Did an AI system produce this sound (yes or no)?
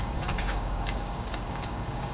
yes